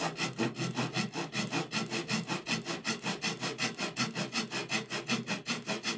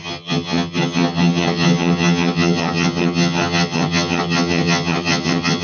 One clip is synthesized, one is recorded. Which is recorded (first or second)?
first